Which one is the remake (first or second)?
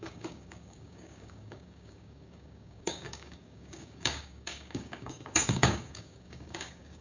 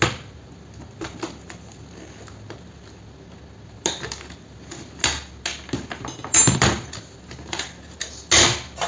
first